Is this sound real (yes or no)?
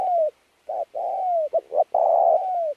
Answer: no